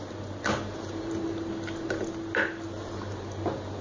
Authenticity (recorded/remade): recorded